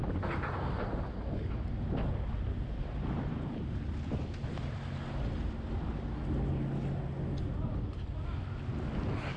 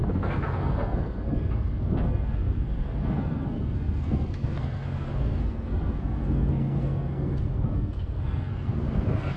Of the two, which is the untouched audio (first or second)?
first